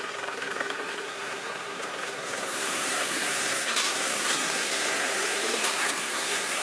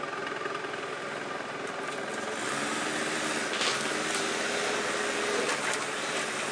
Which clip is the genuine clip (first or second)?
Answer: second